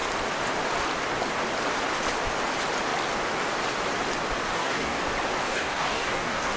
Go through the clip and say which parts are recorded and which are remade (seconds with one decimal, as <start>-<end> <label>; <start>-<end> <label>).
0.0-4.5 recorded; 4.5-5.0 remade; 5.0-5.4 recorded; 5.4-6.6 remade